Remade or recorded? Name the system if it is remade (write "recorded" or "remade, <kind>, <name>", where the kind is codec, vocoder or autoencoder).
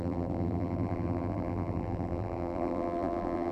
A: remade, vocoder, BigVGAN v2